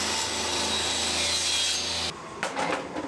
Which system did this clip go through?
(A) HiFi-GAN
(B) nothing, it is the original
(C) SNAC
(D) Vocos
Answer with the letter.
B